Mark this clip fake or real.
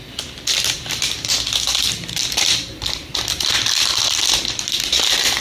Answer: fake